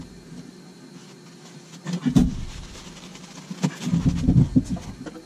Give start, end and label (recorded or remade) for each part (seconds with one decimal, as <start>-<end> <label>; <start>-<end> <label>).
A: 0.0-5.3 recorded